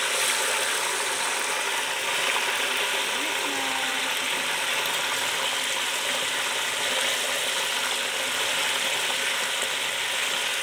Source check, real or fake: real